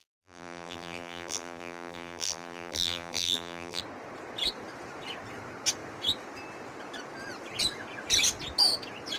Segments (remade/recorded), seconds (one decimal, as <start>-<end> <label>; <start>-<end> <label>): 0.0-3.8 remade; 3.8-9.2 recorded